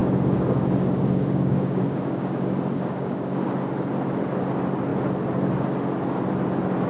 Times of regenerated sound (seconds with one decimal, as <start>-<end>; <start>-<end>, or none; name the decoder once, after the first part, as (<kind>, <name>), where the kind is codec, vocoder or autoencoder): 0.0-3.5 (codec, DAC)

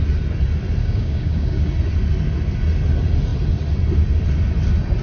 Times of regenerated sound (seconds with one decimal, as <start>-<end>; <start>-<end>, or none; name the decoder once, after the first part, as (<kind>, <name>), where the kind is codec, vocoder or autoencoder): 0.8-1.6 (codec, DAC)

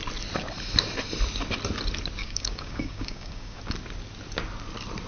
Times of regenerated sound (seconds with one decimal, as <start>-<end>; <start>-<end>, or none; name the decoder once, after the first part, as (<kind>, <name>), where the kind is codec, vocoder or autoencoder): 2.2-3.6 (codec, DAC)

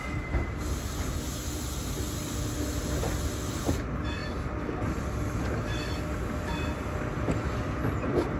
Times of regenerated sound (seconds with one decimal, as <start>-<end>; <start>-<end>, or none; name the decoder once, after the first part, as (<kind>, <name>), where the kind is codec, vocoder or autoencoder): none